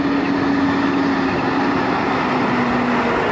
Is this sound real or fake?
real